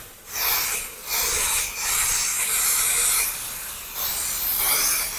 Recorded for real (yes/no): yes